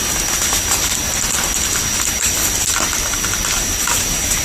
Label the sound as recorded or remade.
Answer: recorded